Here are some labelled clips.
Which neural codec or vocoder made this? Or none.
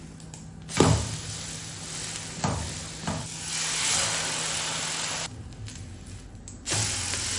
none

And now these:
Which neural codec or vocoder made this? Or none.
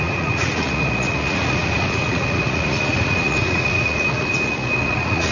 vocoder, Vocos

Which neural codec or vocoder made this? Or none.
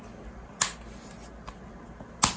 none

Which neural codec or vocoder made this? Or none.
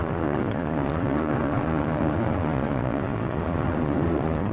vocoder, Vocos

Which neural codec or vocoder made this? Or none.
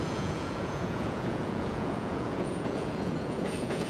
vocoder, Vocos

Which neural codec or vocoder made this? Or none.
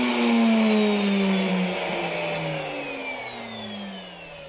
none